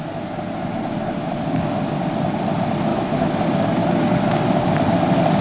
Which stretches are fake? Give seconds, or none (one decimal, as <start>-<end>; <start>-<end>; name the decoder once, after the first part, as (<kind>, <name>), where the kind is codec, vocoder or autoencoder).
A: 2.9-3.4 (autoencoder, DAC-VAE)